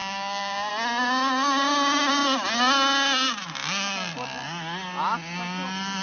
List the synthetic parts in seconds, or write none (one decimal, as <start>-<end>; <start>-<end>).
0.0-0.7